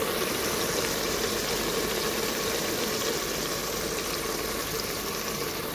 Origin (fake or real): real